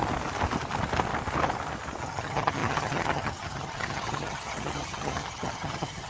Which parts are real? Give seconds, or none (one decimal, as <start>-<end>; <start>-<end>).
0.0-2.0